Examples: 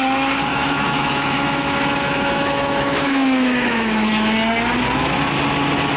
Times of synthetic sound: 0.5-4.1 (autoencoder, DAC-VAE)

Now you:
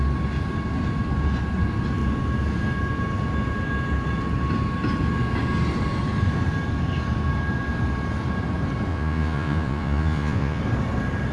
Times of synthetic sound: 8.9-10.6 (vocoder, Vocos)